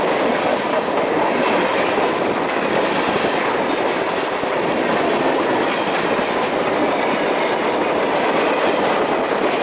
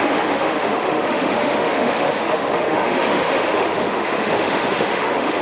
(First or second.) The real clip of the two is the first